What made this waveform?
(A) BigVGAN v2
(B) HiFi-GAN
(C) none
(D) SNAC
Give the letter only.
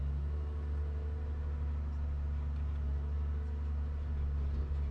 C